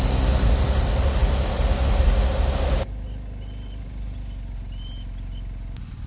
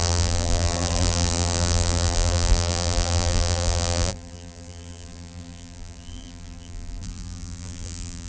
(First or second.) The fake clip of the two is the second